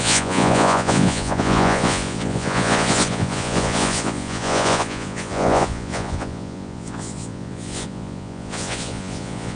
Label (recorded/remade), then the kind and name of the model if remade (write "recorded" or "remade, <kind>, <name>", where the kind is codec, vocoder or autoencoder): remade, vocoder, Vocos